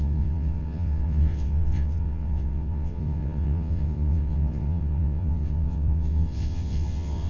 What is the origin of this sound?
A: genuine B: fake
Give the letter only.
B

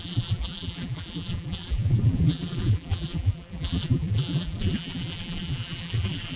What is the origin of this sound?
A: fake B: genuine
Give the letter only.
A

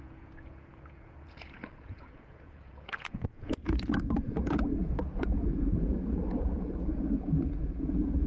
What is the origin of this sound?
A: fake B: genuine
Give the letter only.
A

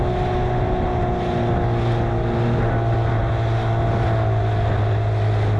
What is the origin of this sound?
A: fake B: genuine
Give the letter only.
B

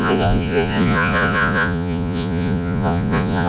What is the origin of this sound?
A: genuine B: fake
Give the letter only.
B